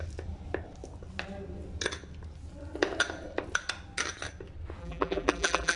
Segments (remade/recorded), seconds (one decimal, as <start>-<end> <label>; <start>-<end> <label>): 0.0-4.8 recorded; 4.8-5.8 remade